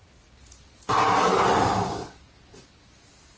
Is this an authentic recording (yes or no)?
yes